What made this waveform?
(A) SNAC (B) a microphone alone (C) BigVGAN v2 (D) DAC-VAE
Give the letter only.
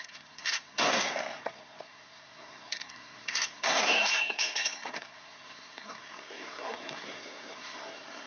A